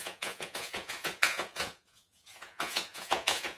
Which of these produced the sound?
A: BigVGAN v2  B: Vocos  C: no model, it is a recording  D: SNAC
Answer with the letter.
B